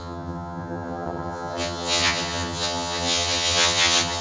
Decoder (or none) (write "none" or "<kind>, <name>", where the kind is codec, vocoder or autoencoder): vocoder, HiFi-GAN